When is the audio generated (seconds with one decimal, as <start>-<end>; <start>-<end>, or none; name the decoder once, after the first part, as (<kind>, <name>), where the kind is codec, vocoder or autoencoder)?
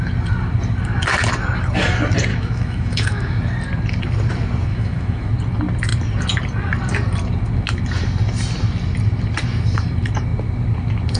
2.3-3.4 (autoencoder, DAC-VAE); 4.7-5.3